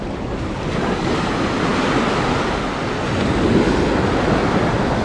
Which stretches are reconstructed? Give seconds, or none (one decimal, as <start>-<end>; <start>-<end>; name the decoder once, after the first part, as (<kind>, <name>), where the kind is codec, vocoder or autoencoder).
none

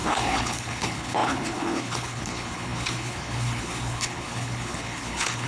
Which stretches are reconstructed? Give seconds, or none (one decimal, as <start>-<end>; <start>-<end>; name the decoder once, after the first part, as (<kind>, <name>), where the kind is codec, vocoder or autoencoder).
0.0-5.5 (codec, HILCodec)

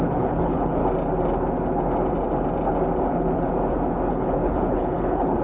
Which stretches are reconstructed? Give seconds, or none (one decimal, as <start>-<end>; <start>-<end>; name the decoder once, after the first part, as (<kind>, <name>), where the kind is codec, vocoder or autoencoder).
0.0-0.8 (codec, HILCodec); 3.1-3.5; 4.1-5.4

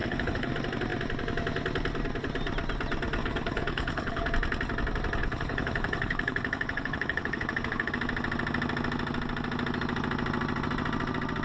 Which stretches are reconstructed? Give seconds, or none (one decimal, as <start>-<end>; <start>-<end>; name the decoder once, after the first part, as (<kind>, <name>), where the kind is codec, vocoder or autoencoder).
0.0-0.5 (codec, HILCodec); 3.2-4.3; 5.2-7.9

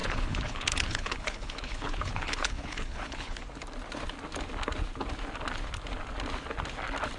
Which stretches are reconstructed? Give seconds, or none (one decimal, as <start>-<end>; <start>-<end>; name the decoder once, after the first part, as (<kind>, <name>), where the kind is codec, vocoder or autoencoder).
0.0-3.4 (codec, HILCodec)

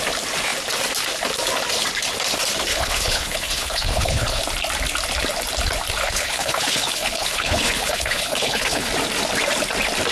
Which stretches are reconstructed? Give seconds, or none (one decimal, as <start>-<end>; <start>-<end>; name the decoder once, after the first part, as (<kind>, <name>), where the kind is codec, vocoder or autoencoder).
2.7-4.4 (codec, HILCodec); 6.0-8.9

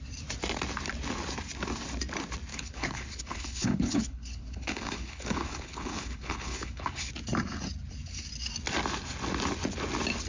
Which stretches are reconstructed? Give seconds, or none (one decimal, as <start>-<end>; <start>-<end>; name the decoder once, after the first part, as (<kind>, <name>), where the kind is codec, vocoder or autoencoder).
2.5-7.1 (codec, HILCodec)